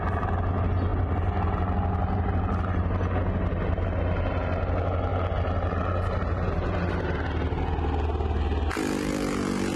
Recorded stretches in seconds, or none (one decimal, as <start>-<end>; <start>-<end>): 0.0-9.8